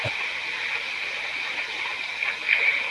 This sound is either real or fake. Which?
real